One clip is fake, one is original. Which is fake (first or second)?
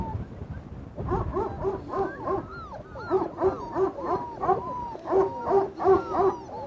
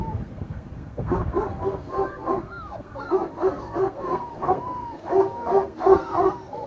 second